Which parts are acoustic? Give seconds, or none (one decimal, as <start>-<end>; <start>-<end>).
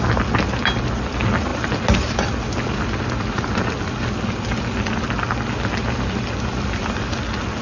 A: 0.0-7.6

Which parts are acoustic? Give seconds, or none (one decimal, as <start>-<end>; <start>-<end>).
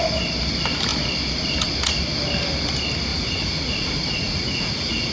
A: 0.0-3.1